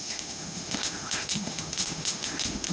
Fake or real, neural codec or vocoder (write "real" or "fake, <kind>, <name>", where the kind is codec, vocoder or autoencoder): fake, autoencoder, DAC-VAE